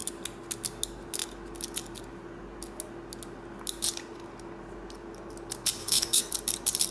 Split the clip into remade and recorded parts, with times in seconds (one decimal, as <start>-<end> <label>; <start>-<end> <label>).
0.0-5.8 recorded; 5.8-6.3 remade; 6.3-6.9 recorded